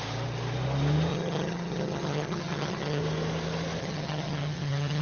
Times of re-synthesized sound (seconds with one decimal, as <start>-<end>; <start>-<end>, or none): 1.1-3.0; 3.8-5.0